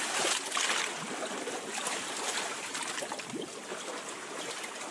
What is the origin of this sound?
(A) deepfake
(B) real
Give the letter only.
B